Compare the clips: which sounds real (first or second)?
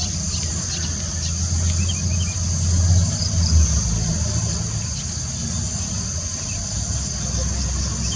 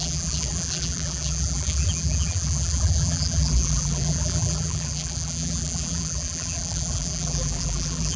first